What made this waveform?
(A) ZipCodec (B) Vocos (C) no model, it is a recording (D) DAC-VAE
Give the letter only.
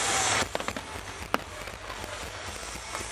C